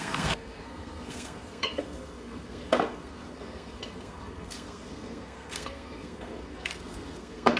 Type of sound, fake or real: fake